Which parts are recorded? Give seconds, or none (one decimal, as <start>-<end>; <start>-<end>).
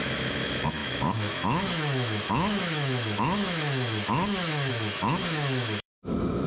none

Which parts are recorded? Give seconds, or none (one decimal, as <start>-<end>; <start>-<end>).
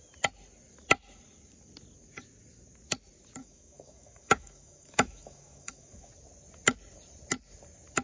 0.0-3.4; 6.1-8.0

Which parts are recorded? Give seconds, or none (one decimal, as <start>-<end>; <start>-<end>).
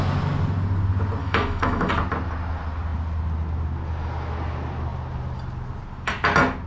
0.0-1.2; 1.9-6.7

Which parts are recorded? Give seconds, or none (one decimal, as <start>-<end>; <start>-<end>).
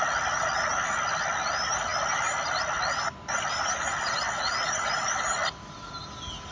0.0-6.5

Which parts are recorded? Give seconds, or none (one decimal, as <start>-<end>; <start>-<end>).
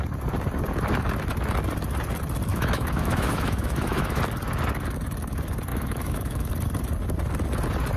0.0-2.5; 4.2-5.7; 6.5-8.0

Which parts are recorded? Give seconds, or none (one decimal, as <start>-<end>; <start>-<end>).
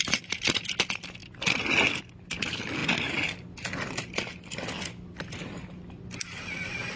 0.0-7.0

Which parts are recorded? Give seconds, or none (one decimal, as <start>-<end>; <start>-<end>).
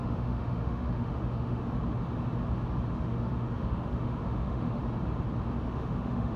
1.6-2.9; 4.8-5.7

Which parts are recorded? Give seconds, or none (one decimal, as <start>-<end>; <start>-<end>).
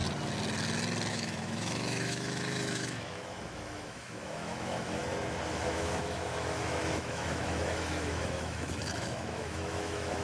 0.0-1.1; 5.0-5.5